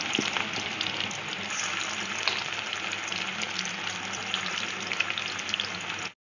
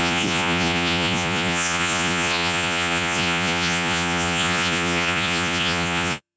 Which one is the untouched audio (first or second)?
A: first